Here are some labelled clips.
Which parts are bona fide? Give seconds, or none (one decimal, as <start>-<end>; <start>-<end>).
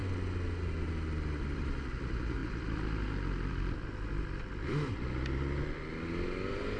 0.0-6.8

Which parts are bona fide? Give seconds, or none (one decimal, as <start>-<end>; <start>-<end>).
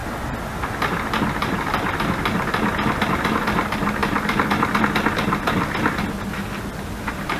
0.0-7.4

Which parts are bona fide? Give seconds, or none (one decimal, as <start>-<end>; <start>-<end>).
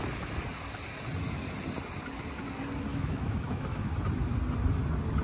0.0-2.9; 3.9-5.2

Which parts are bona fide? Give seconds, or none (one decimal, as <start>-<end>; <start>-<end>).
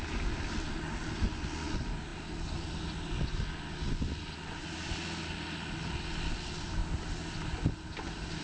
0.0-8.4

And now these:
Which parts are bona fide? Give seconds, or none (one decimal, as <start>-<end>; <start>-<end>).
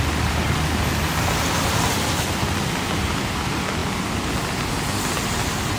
0.0-5.8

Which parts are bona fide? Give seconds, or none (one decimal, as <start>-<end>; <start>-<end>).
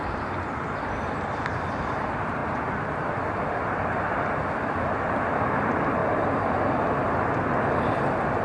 0.0-8.4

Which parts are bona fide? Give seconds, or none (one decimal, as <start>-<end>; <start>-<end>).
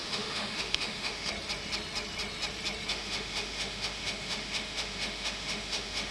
1.3-2.9